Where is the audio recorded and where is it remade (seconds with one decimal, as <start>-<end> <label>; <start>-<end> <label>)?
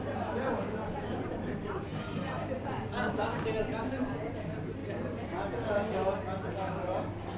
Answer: 0.0-4.8 remade; 4.8-7.4 recorded